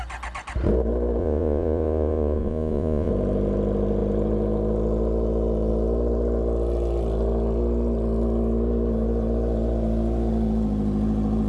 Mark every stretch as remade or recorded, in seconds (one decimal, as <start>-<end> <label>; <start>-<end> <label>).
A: 0.0-1.2 recorded; 1.2-3.1 remade; 3.1-11.5 recorded